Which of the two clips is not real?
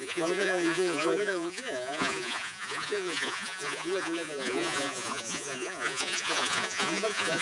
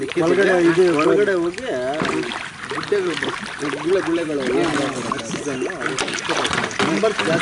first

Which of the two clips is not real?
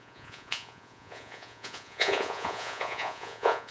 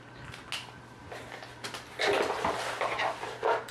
first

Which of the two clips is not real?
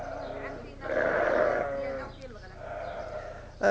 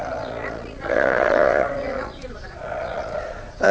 second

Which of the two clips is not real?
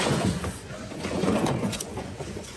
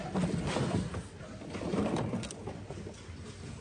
first